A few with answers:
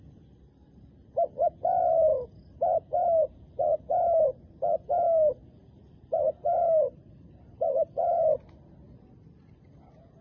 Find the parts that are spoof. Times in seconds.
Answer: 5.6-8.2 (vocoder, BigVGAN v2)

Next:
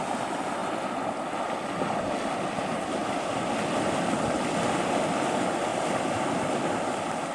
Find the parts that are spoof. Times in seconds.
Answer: 3.0-4.8 (vocoder, BigVGAN v2); 5.7-6.7

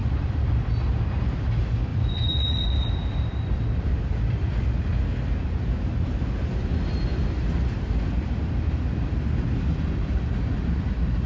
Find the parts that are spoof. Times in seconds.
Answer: 0.0-0.6 (vocoder, BigVGAN v2); 1.9-4.6; 7.1-8.5

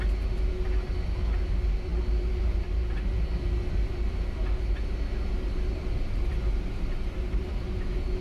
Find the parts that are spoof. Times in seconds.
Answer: 6.3-7.5 (vocoder, BigVGAN v2)

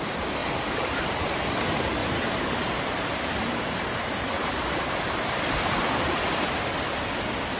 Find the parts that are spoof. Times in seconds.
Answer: 0.4-1.0 (vocoder, BigVGAN v2); 2.0-6.6

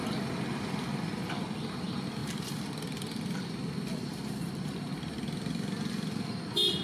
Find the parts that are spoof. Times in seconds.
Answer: 2.2-2.7 (vocoder, BigVGAN v2); 4.1-5.2

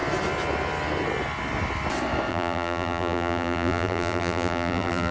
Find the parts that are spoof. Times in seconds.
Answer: 2.3-5.1 (vocoder, BigVGAN v2)

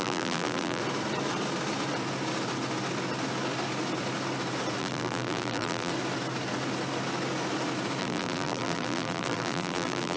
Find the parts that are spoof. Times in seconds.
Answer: 0.0-0.8 (vocoder, BigVGAN v2); 4.8-5.9; 8.0-10.2